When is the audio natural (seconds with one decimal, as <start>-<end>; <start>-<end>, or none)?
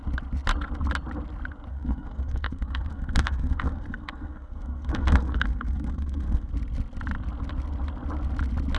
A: 0.0-1.7; 6.5-8.8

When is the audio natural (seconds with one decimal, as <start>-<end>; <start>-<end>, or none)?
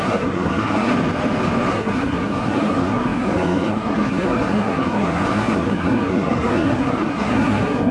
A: 0.9-1.7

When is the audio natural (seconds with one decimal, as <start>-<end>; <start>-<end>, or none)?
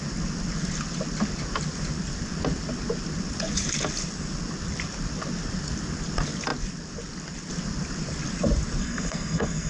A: 0.0-8.8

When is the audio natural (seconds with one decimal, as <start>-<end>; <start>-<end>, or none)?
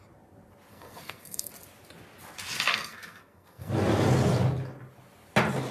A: 0.0-0.7; 1.5-2.7; 3.7-5.7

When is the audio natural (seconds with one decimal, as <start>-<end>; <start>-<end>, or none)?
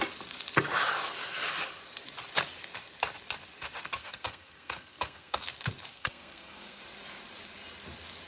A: 0.0-4.0; 5.4-5.9; 6.8-8.3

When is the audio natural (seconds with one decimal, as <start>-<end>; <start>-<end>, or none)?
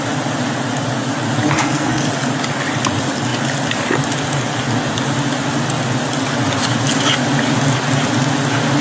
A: 0.0-1.6; 2.1-8.8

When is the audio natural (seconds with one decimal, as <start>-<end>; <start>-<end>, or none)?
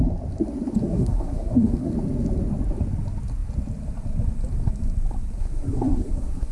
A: 0.0-0.8; 1.9-5.4